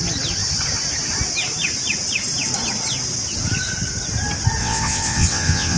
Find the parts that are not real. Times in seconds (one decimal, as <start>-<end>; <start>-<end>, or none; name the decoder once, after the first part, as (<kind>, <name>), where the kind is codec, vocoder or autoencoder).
4.6-5.8 (vocoder, WaveNeXt)